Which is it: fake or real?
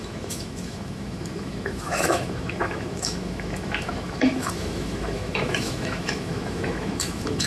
fake